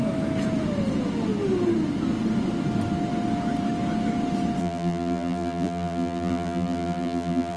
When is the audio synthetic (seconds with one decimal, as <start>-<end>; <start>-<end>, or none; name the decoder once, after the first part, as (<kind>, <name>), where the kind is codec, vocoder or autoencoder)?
4.6-7.6 (vocoder, BigVGAN v2)